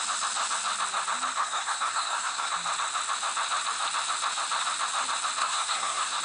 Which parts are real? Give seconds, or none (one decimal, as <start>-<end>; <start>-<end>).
0.0-1.4; 2.5-5.4